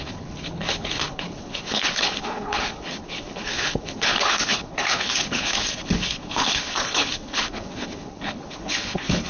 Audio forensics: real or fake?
fake